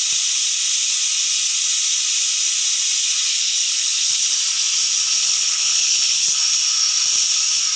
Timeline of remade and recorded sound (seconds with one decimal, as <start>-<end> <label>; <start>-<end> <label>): 0.0-3.3 recorded; 3.3-4.4 remade; 4.4-5.2 recorded; 5.2-6.4 remade; 6.4-7.8 recorded